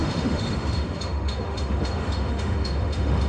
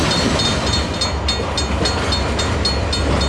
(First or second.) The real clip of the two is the second